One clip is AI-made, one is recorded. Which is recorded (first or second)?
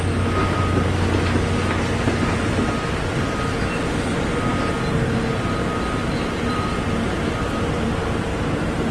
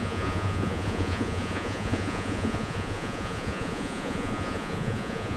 first